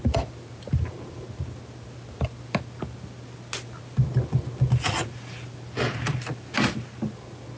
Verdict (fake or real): real